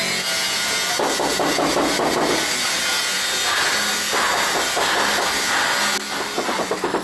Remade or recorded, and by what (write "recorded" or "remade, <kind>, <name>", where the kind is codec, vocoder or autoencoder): recorded